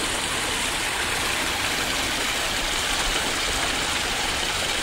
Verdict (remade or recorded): recorded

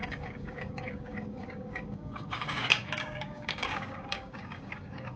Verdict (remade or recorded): remade